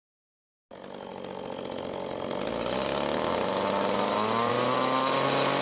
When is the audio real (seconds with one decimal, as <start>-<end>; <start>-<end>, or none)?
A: 0.0-5.6